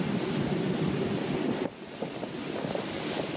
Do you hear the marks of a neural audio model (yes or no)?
no